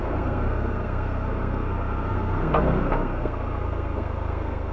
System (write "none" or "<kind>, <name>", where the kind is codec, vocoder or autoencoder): codec, SNAC